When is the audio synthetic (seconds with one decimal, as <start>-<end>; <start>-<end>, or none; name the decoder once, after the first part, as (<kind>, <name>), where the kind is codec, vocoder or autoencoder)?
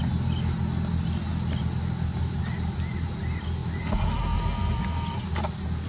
none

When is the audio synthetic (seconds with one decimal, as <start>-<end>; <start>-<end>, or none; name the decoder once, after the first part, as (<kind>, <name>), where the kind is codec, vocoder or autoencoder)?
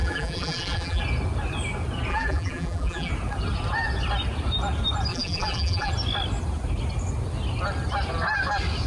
0.0-1.0 (vocoder, BigVGAN v2); 2.1-3.1; 5.1-5.9